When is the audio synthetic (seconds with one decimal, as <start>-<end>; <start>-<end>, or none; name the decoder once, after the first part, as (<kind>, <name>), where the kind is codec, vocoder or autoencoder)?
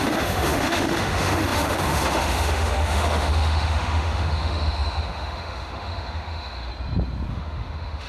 0.0-6.7 (autoencoder, DAC-VAE); 7.3-8.1